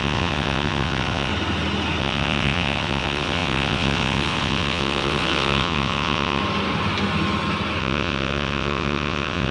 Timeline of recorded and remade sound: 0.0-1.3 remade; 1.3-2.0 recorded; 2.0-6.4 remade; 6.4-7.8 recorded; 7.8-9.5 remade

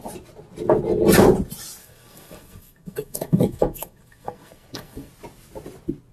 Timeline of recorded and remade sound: 0.0-1.8 recorded; 1.8-5.1 remade; 5.1-6.1 recorded

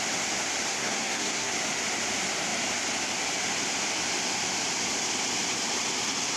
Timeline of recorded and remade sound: 0.0-0.7 recorded; 0.7-1.5 remade; 1.5-6.4 recorded

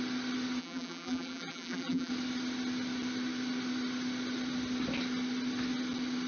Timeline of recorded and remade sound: 0.0-0.6 recorded; 0.6-2.1 remade; 2.1-6.3 recorded

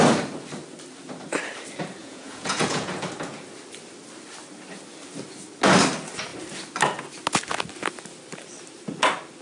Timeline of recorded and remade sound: 0.0-2.0 recorded; 2.0-2.9 remade; 2.9-9.4 recorded

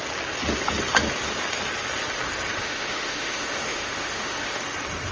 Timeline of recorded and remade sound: 0.0-2.6 recorded; 2.6-4.6 remade; 4.6-5.1 recorded